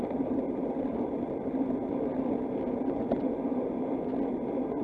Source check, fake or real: real